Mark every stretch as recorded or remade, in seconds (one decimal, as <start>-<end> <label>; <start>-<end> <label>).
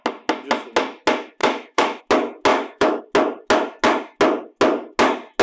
0.0-1.4 recorded; 1.4-2.0 remade; 2.0-2.5 recorded; 2.5-3.0 remade; 3.0-5.4 recorded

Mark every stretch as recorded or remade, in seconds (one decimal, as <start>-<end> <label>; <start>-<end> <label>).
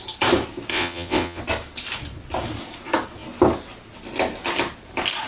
0.0-0.7 recorded; 0.7-1.4 remade; 1.4-5.3 recorded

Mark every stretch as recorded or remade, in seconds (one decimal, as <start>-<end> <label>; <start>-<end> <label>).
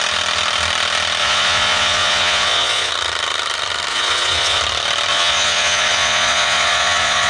0.0-1.2 recorded; 1.2-2.9 remade; 2.9-3.9 recorded; 3.9-4.6 remade; 4.6-5.1 recorded; 5.1-7.3 remade